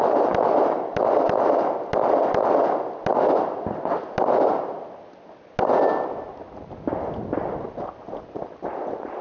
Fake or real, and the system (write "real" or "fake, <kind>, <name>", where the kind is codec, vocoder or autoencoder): real